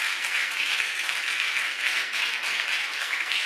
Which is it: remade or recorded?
remade